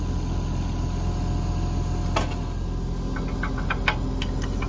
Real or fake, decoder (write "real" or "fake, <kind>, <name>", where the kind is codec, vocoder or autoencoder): real